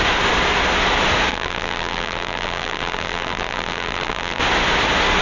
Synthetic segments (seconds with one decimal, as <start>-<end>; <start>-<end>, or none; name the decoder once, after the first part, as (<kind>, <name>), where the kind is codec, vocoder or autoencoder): 1.3-4.4 (vocoder, BigVGAN v2)

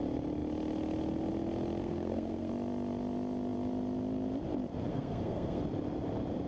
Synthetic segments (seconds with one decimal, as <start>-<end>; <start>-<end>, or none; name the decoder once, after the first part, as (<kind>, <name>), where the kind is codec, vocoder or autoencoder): 1.8-2.5 (codec, SNAC); 4.9-5.6

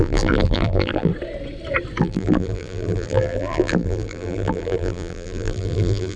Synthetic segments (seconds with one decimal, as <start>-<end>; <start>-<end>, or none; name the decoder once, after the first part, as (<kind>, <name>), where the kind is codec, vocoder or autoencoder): 0.0-1.1 (vocoder, BigVGAN v2); 2.0-6.2

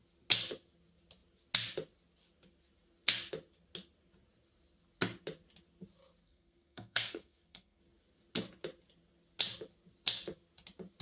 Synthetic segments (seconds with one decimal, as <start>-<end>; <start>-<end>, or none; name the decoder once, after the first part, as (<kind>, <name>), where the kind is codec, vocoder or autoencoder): 6.2-7.8 (codec, SNAC)

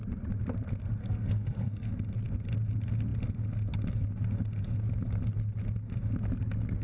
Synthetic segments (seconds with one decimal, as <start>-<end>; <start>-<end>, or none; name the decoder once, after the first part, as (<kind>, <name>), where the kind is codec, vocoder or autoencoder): 1.0-1.9 (codec, SNAC)

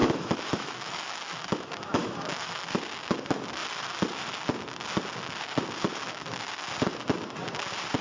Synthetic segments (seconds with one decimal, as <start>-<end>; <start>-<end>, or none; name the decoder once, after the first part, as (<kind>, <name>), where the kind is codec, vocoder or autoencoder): 0.0-2.6 (autoencoder, DAC-VAE)

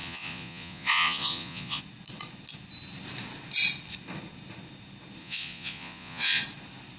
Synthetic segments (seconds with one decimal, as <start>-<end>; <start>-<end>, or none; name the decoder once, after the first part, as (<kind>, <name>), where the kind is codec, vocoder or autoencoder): 0.0-1.8 (vocoder, Vocos); 5.2-6.4